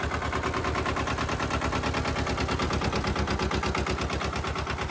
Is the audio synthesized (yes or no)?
no